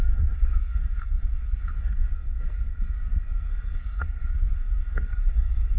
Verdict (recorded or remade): remade